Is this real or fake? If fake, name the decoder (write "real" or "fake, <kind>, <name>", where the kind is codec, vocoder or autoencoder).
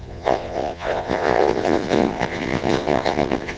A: fake, vocoder, Vocos